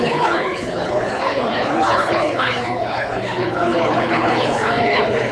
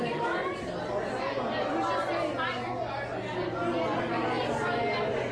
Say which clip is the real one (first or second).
second